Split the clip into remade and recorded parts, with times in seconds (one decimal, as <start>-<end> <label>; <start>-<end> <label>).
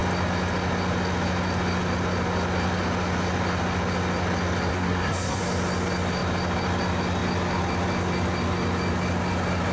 0.0-4.7 recorded; 4.7-5.4 remade; 5.4-9.7 recorded